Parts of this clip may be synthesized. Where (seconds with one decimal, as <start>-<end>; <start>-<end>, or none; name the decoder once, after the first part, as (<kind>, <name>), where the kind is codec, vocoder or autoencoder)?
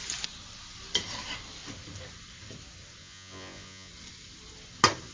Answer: 3.0-3.9 (vocoder, Vocos)